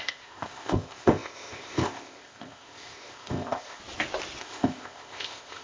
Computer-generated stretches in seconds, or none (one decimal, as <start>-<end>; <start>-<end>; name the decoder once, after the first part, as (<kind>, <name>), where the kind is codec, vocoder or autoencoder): 0.0-3.8 (codec, ZipCodec); 4.4-5.6